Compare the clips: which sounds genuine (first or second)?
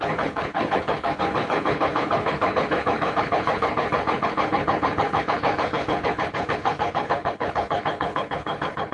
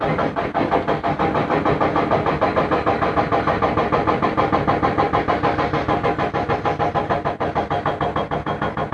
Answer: second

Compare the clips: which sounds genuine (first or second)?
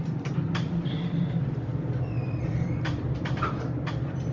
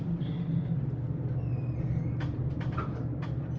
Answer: second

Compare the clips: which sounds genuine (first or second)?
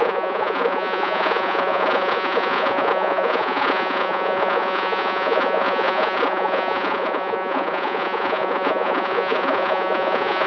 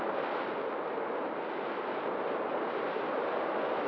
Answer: second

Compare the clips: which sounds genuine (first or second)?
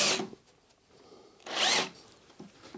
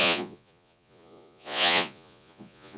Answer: first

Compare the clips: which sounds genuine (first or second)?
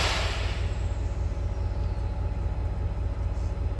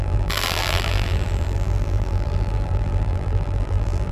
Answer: first